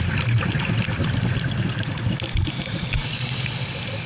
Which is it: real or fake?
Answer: real